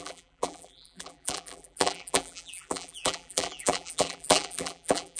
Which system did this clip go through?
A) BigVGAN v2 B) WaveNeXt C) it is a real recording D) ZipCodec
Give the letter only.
A